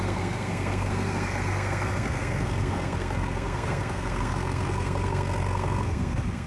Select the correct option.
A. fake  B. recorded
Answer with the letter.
A